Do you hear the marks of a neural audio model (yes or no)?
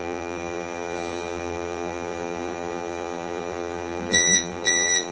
yes